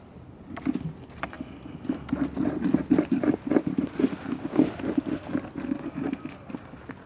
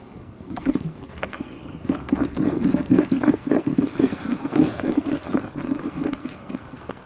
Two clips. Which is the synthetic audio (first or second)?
second